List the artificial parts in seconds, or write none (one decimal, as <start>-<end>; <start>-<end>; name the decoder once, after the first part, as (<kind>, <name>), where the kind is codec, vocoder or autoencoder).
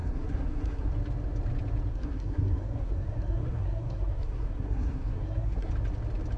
0.0-0.9 (codec, SNAC); 1.9-5.7